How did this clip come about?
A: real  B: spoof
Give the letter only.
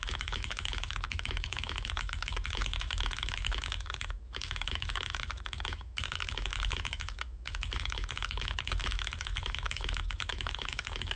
B